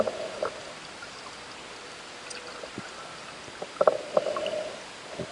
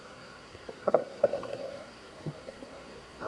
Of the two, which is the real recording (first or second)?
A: first